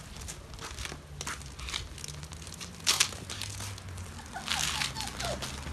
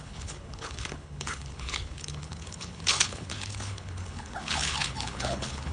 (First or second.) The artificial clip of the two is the second